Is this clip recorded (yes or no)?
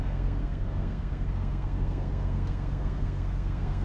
no